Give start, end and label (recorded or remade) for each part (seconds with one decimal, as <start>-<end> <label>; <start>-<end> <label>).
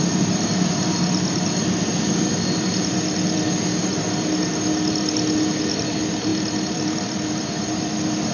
0.0-8.3 recorded